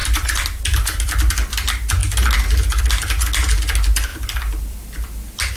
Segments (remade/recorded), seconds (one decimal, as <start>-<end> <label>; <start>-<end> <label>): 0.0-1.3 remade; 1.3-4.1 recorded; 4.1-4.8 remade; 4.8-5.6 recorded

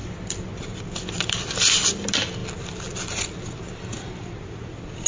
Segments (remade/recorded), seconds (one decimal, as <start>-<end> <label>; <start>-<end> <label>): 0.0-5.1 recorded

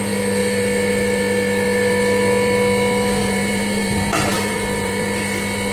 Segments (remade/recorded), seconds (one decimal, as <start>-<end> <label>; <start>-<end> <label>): 0.0-3.2 recorded; 3.2-5.2 remade; 5.2-5.7 recorded